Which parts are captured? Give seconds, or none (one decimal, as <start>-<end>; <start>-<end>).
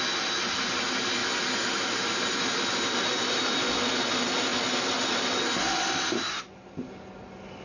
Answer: 0.0-7.6